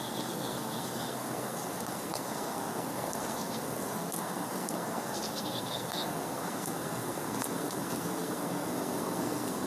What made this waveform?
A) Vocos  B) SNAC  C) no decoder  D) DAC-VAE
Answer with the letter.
B